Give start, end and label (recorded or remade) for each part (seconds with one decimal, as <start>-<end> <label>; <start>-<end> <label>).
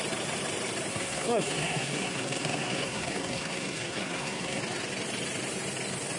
0.0-0.9 recorded; 0.9-4.6 remade; 4.6-6.2 recorded